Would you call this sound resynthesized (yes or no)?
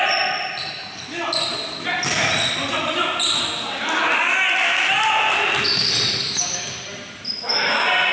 no